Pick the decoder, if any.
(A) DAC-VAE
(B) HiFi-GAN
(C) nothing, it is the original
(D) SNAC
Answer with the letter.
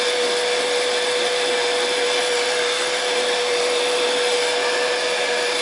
C